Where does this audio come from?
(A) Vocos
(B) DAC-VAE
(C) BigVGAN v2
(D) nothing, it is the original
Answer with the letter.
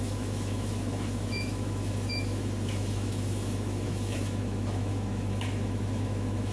B